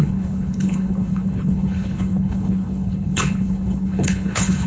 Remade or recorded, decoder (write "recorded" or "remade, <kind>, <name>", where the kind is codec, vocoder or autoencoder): remade, codec, HILCodec